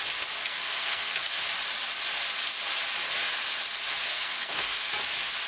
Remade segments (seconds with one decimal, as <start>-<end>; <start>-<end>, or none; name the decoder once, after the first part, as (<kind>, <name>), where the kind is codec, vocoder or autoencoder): 0.4-1.3 (codec, SNAC); 4.1-4.9